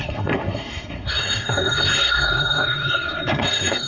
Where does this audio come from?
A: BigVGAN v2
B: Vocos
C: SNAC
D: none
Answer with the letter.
C